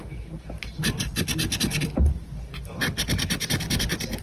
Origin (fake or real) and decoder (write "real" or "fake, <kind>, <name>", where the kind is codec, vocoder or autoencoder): real